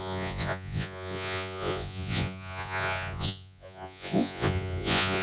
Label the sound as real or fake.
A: fake